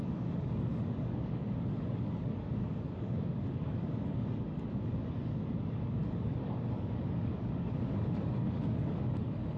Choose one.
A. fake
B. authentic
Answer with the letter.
A